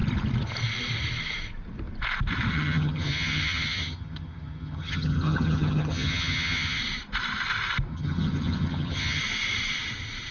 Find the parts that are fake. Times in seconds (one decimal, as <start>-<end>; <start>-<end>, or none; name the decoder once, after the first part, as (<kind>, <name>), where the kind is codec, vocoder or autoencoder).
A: 2.5-6.8 (vocoder, HiFi-GAN); 7.9-9.2